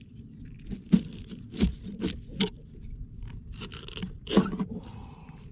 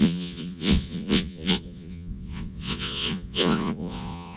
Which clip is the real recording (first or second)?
first